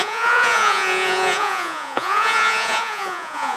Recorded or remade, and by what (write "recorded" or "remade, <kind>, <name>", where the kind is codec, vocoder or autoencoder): remade, vocoder, Vocos